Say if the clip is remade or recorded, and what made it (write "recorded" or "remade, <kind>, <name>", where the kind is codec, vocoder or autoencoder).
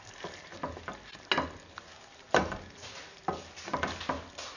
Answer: recorded